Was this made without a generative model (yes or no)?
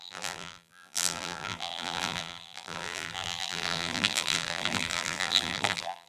no